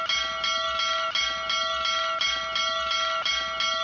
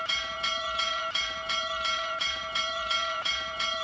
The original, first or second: first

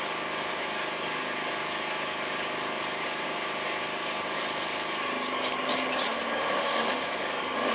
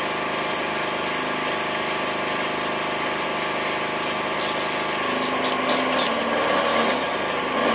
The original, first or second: second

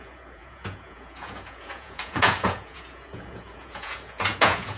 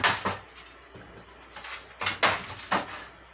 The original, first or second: second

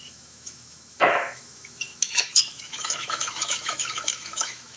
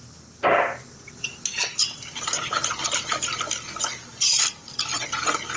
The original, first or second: second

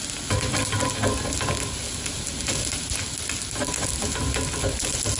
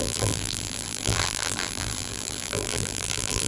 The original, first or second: first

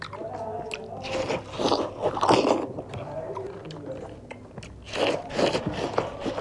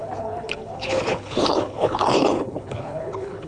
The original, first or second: first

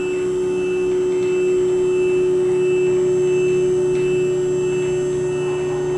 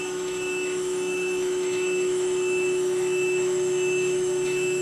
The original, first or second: first